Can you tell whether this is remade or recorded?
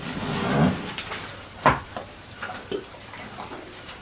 recorded